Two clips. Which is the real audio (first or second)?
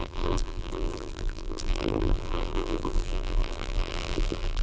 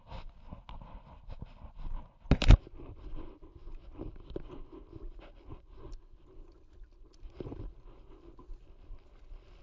second